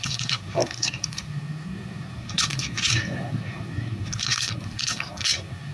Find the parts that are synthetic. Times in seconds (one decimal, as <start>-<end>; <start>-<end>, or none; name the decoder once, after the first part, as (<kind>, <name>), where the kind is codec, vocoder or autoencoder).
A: 0.0-5.7 (codec, SNAC)